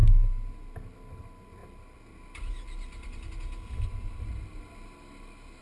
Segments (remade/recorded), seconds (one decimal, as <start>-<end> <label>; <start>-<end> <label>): 0.0-5.6 recorded